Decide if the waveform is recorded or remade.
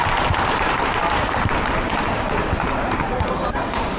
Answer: remade